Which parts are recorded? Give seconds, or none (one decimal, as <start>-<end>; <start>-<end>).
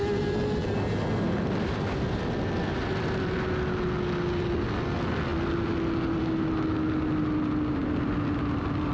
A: 0.0-8.9